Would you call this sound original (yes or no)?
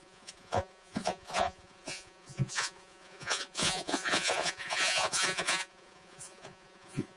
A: no